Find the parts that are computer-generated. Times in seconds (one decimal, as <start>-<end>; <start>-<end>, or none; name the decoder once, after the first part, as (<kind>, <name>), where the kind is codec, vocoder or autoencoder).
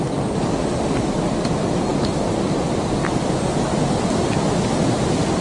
none